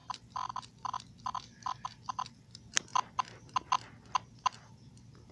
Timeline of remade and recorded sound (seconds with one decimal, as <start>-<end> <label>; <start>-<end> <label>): 0.0-5.3 recorded